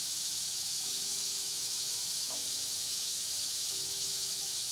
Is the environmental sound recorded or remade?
remade